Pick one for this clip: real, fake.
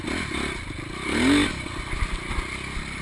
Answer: real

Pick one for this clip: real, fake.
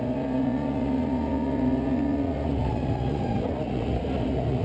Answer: fake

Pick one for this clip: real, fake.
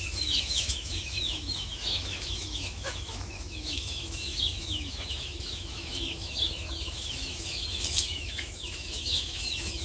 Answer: fake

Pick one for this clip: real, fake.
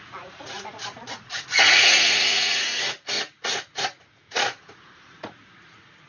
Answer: fake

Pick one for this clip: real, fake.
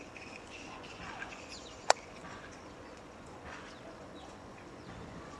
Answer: fake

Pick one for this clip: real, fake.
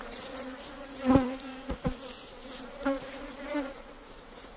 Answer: fake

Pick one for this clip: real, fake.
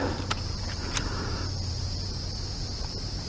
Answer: fake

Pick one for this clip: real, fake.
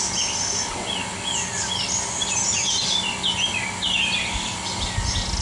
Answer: real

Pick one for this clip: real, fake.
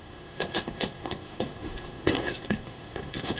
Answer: fake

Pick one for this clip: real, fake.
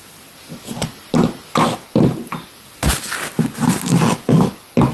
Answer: real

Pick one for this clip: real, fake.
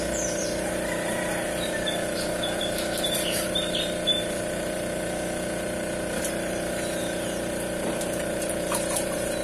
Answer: fake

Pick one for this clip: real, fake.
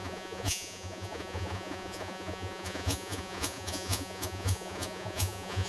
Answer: fake